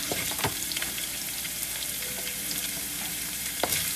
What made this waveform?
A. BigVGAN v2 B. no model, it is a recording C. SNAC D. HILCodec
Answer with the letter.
A